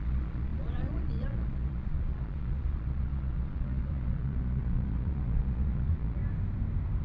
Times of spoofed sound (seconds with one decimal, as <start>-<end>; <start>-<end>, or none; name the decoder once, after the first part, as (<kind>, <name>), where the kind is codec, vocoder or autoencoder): 0.0-6.2 (vocoder, Vocos)